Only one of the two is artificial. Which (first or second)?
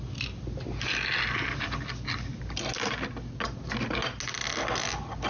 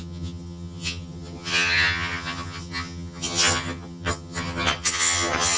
second